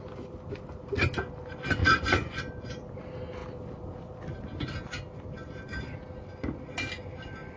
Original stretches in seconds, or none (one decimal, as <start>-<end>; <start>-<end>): 0.0-1.8; 2.4-7.6

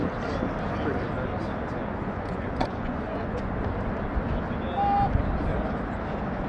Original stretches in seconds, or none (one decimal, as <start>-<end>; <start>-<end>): 0.0-1.8; 3.5-6.5

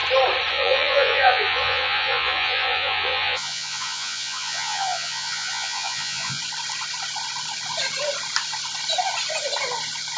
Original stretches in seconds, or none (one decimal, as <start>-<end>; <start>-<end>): 0.0-0.5; 6.4-10.2

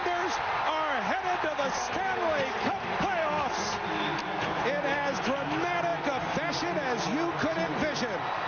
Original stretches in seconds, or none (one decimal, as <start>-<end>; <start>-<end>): 0.0-8.5

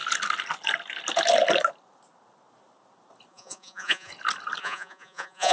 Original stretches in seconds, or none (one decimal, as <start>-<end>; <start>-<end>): 0.0-3.3; 4.1-4.6